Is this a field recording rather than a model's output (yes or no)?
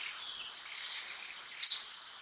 yes